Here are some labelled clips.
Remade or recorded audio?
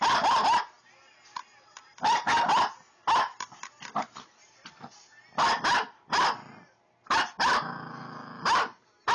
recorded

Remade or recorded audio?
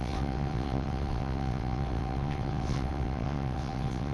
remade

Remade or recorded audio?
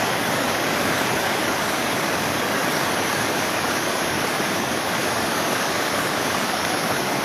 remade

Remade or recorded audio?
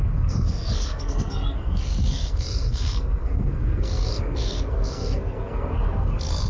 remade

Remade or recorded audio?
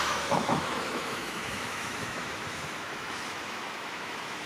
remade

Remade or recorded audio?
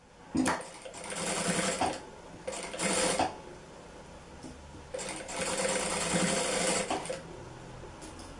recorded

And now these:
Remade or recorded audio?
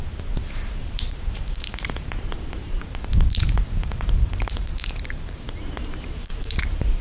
remade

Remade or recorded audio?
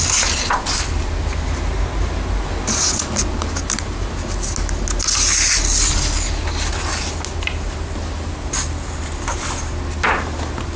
recorded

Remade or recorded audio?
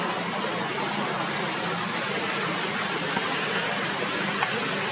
recorded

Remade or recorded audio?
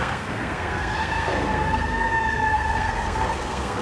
remade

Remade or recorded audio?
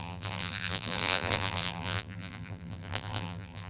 remade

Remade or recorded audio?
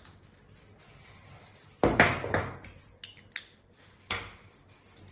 recorded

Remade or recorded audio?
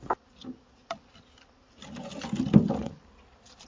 recorded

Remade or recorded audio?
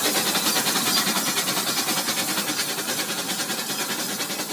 recorded